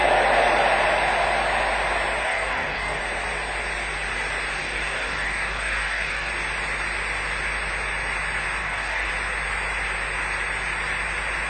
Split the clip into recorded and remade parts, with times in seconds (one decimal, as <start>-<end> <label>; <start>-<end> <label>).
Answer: 0.0-2.2 recorded; 2.2-3.0 remade; 3.0-4.6 recorded; 4.6-6.3 remade; 6.3-8.6 recorded; 8.6-9.1 remade; 9.1-11.5 recorded